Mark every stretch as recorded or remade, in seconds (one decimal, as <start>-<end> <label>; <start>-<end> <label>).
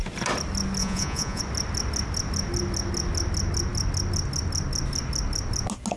0.0-0.8 recorded; 0.8-1.4 remade; 1.4-6.0 recorded